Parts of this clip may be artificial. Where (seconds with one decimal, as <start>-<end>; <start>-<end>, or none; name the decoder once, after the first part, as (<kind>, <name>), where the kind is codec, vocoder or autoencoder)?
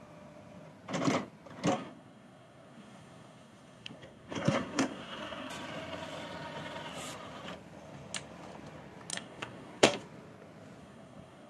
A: 1.7-5.5 (codec, SNAC); 9.1-10.0; 10.8-11.5